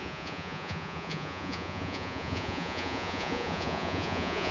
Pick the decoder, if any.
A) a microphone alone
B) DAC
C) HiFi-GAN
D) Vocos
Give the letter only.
D